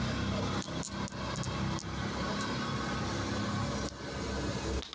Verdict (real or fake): real